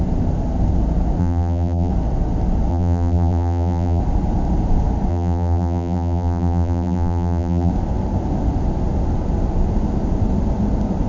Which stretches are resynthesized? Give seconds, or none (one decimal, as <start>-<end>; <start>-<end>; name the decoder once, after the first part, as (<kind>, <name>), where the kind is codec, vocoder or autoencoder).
1.2-1.9 (vocoder, BigVGAN v2); 2.7-4.0; 5.1-7.7